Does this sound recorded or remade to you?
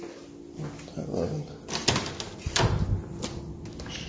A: recorded